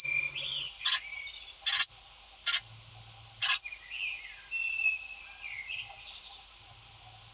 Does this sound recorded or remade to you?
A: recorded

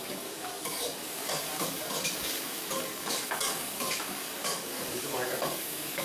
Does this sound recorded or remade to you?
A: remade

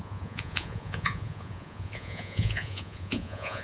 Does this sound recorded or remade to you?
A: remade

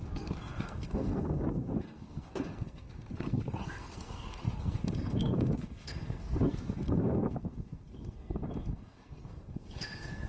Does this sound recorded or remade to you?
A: remade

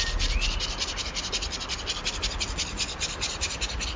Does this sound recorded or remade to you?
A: recorded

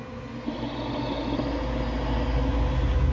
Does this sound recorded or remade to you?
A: recorded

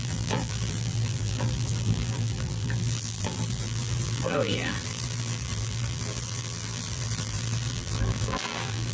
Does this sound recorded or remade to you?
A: remade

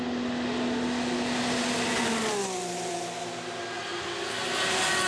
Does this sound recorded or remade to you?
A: recorded